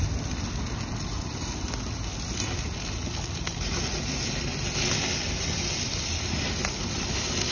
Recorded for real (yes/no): yes